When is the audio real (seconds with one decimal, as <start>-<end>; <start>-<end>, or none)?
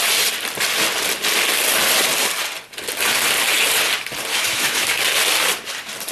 0.0-4.3; 5.0-6.1